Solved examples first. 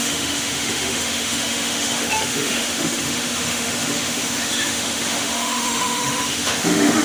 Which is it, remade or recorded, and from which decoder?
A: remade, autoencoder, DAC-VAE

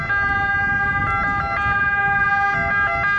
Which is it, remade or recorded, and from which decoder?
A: recorded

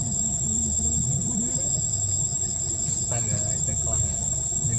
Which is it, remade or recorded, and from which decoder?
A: recorded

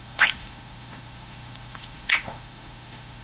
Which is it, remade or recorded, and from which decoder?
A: remade, autoencoder, DAC-VAE